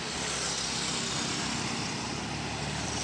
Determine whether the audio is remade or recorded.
recorded